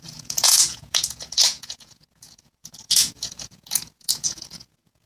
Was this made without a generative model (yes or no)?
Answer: no